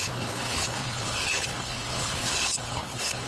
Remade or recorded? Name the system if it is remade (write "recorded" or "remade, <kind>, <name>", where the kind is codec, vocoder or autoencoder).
remade, codec, HILCodec